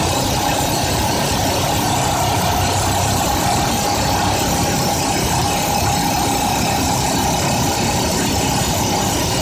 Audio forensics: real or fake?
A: fake